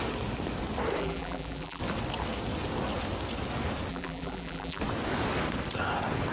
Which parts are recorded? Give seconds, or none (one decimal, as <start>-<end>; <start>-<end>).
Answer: 0.0-1.0; 1.8-3.9; 4.8-6.3